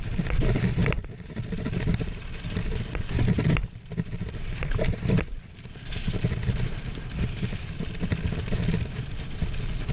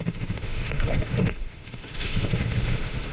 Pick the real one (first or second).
first